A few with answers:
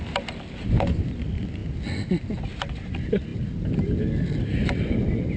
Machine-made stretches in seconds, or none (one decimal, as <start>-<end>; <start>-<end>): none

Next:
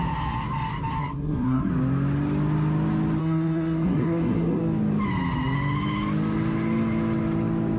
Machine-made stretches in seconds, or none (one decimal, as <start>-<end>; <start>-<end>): 1.0-1.7; 3.2-4.6

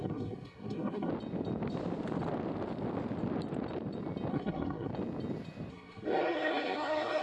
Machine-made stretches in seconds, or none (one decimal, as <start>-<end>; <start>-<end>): 0.0-1.1; 4.3-4.9; 5.7-7.2